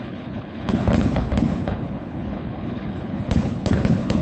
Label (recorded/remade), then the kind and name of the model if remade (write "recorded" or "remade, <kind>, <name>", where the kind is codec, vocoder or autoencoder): remade, codec, HILCodec